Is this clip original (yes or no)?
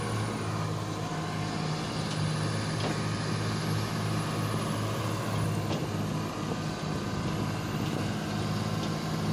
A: yes